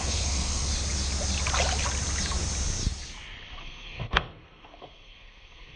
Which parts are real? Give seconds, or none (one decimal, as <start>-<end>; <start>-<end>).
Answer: 0.7-3.6